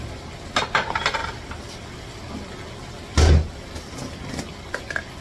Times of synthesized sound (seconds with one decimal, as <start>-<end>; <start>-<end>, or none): none

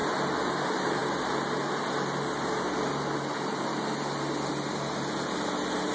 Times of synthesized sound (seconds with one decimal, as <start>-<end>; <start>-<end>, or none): none

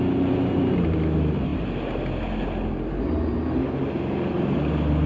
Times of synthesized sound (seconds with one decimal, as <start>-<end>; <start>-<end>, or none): none

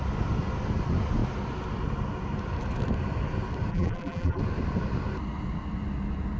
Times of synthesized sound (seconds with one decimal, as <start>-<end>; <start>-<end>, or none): 3.7-4.4